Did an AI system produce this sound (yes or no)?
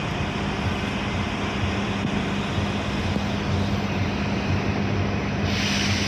no